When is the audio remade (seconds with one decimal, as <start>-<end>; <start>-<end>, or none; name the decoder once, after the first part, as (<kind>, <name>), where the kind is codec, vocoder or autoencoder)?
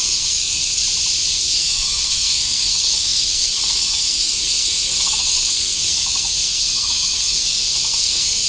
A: 0.0-0.8 (codec, SNAC); 1.3-8.5